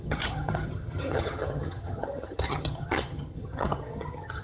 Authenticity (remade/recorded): remade